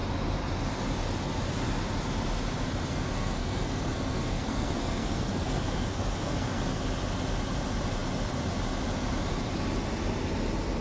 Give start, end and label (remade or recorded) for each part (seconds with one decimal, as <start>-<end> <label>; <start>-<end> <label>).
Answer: 0.0-2.9 recorded; 2.9-6.8 remade; 6.8-10.8 recorded